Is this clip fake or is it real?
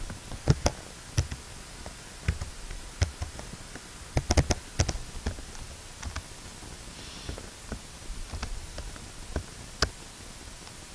real